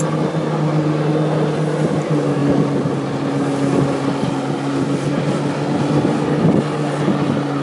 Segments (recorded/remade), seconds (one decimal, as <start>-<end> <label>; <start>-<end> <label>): 0.0-7.6 recorded